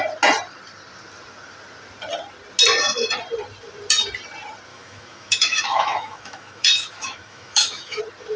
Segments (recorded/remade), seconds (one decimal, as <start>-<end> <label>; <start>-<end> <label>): 0.0-4.7 recorded; 4.7-8.0 remade; 8.0-8.4 recorded